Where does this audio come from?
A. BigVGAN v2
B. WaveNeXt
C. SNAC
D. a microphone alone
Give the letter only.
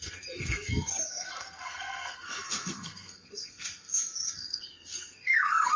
C